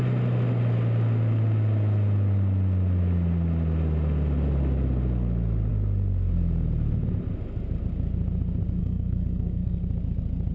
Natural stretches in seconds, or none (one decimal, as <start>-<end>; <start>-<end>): 0.0-8.8; 9.8-10.5